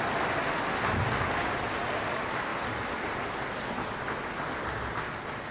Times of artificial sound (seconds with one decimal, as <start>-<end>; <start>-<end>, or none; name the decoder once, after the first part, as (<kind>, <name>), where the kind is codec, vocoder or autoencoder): none

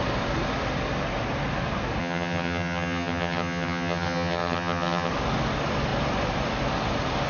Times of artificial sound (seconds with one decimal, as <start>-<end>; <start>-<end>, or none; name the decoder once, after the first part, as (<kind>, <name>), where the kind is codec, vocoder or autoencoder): 2.0-5.1 (vocoder, HiFi-GAN)

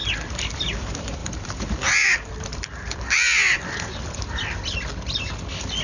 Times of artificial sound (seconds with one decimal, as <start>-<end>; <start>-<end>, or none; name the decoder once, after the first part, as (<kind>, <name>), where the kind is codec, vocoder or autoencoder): 1.2-4.7 (vocoder, BigVGAN v2)

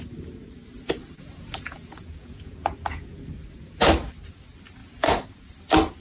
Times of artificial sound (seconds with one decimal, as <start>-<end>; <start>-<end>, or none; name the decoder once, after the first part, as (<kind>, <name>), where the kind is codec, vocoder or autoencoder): 1.0-4.1 (vocoder, Vocos); 4.8-5.5

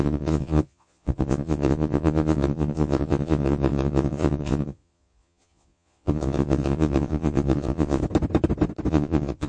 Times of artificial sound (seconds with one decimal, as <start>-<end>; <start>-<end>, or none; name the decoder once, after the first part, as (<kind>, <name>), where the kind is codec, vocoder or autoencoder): 0.0-8.0 (vocoder, Vocos); 8.9-9.5

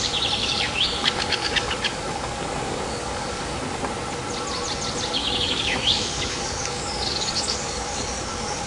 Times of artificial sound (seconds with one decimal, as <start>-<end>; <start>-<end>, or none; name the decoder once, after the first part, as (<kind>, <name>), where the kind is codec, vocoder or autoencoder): 0.4-3.8 (codec, DAC); 5.2-8.7

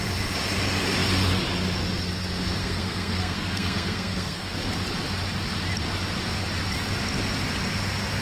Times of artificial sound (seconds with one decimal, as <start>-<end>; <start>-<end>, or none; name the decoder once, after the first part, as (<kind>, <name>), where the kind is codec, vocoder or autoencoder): 2.6-4.5 (codec, SNAC)